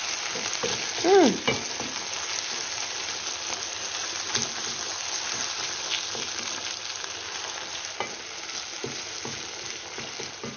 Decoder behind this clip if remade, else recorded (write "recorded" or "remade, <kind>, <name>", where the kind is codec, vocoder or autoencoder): recorded